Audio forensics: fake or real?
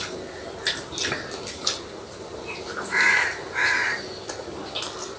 real